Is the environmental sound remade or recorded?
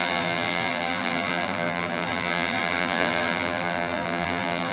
remade